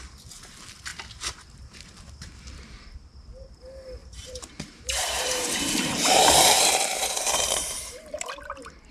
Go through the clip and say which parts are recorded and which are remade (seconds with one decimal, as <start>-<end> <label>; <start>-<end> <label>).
0.0-0.9 recorded; 0.9-2.4 remade; 2.4-4.0 recorded; 4.0-8.3 remade; 8.3-8.9 recorded